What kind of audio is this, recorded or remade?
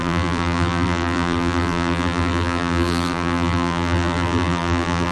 remade